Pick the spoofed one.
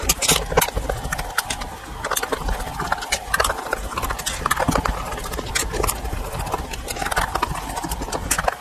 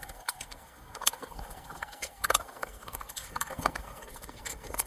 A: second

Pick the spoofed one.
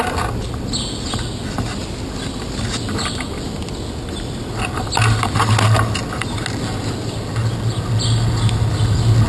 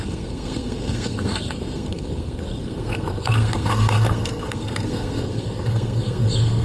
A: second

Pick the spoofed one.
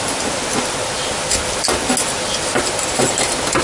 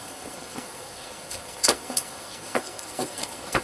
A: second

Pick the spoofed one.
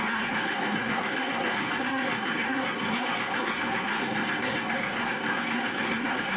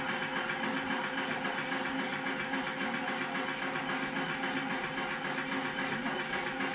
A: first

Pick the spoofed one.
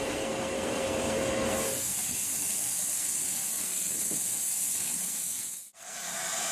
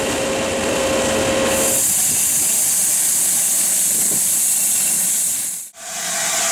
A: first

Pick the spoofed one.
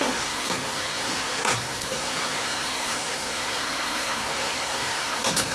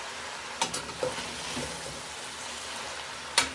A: first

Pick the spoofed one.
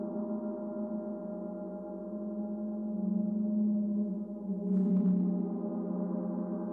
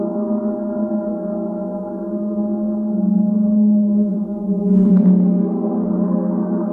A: second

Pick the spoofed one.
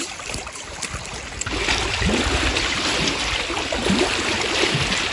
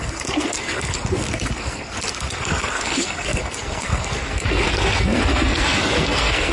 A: second